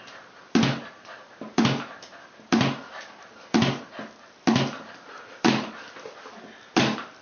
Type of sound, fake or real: real